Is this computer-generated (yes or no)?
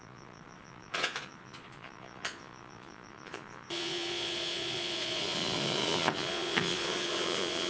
yes